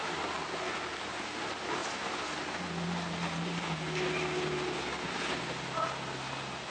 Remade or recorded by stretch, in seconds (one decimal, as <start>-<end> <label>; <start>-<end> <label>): 0.0-6.7 recorded